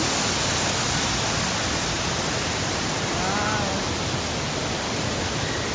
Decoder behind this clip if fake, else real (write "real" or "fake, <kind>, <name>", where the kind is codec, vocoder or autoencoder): real